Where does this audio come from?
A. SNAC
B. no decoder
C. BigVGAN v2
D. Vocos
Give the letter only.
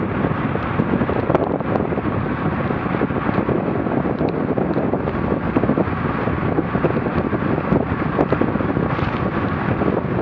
B